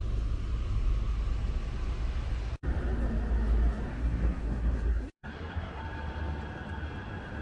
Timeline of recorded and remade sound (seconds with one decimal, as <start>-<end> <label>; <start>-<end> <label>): 0.0-3.9 recorded; 3.9-5.8 remade; 5.8-7.4 recorded